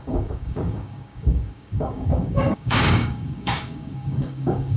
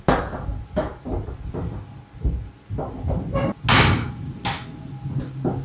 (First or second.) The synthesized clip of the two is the first